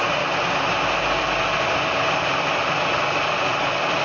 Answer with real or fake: real